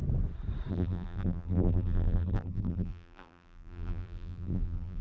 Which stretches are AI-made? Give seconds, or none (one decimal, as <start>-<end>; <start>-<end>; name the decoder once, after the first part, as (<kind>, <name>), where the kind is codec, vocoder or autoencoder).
0.7-5.0 (vocoder, BigVGAN v2)

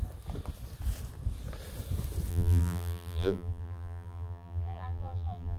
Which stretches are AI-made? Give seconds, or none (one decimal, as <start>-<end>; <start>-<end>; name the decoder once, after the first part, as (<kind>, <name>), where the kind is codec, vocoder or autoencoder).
2.3-5.6 (vocoder, BigVGAN v2)

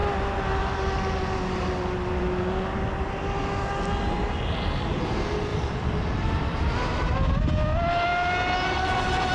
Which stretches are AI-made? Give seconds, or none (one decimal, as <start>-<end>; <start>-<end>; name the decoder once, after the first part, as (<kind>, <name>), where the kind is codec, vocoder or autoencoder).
5.5-7.2 (vocoder, BigVGAN v2)